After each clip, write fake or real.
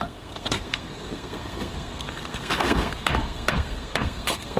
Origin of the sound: fake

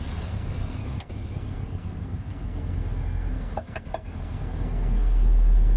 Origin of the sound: fake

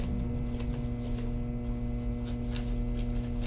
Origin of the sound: real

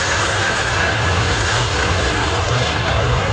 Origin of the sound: fake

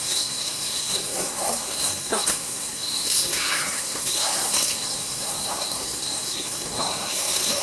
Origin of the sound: fake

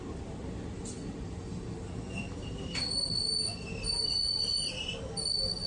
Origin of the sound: real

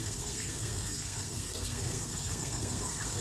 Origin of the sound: fake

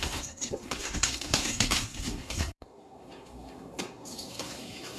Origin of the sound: fake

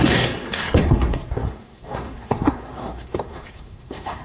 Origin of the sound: fake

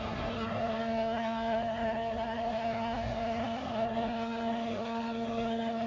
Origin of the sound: fake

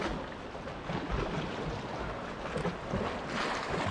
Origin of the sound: real